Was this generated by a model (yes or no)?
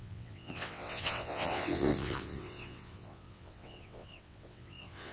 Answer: yes